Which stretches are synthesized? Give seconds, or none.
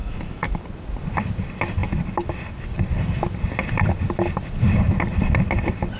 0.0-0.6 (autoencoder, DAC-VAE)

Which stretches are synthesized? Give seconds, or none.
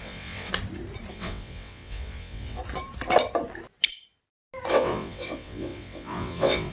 0.0-0.5 (vocoder, WaveNeXt); 1.1-2.6; 4.7-6.7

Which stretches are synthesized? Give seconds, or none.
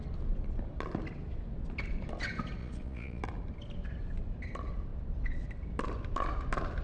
2.6-3.2 (vocoder, Vocos)